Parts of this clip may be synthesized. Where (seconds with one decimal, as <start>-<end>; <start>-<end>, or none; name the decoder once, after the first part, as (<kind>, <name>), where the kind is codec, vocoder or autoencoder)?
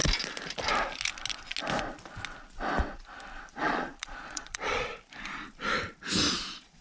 3.5-4.9 (vocoder, Vocos); 6.3-6.8